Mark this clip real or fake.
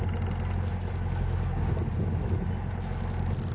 real